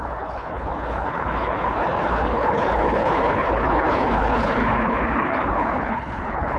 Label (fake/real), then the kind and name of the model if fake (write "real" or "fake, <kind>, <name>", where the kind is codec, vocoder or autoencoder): fake, codec, HILCodec